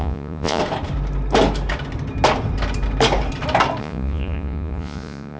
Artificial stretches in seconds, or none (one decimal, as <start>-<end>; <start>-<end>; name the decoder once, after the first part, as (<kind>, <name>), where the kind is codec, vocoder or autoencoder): 0.0-0.6 (vocoder, Vocos); 3.8-5.4